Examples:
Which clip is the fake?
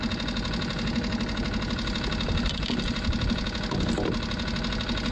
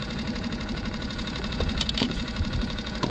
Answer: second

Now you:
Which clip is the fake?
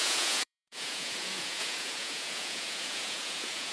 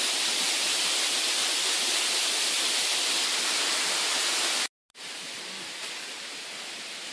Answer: first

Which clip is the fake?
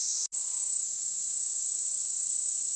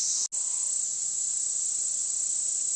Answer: first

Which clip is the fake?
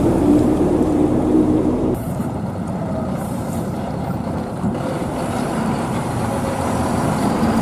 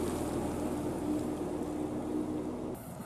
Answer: first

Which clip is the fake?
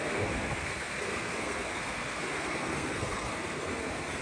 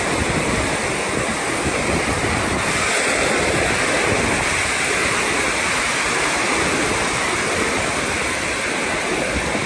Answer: first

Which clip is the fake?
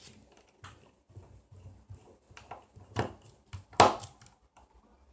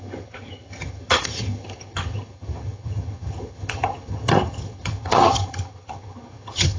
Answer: second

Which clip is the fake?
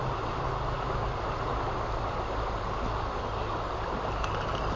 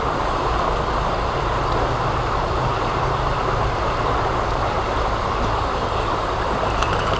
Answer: second